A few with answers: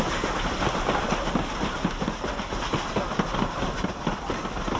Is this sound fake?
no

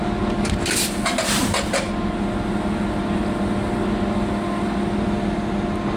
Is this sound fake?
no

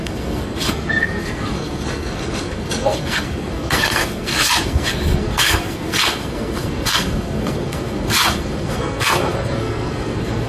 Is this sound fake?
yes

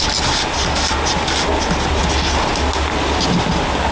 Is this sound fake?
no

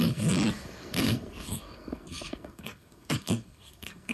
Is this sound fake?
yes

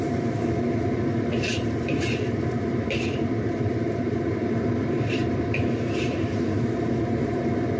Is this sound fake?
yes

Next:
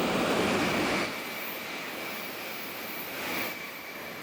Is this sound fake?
no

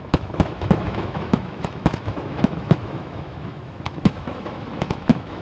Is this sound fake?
yes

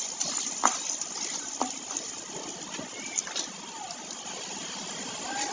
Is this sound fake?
no